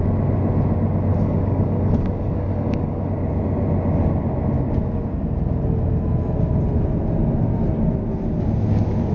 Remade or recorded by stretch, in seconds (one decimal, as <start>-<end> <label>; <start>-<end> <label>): 0.0-1.1 recorded; 1.1-3.1 remade; 3.1-9.1 recorded